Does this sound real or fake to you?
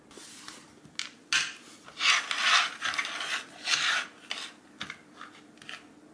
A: real